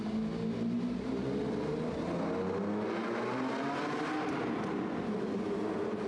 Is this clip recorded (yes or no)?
yes